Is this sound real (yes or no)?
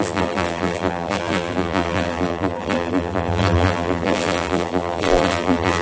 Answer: no